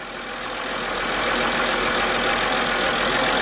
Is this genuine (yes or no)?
yes